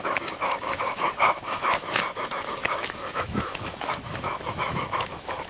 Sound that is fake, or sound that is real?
fake